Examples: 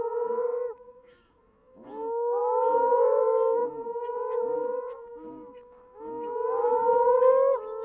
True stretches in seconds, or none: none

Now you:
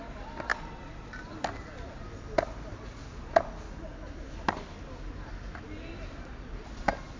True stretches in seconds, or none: 0.0-7.2

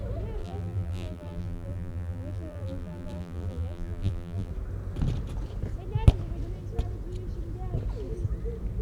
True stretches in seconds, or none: 0.0-0.4; 4.5-8.8

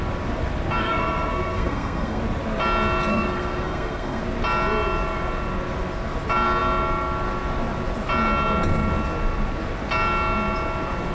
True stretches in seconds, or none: 0.0-0.8; 2.2-3.1; 4.2-11.1